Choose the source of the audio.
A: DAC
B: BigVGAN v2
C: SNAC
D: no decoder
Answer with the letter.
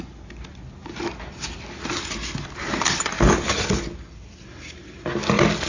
D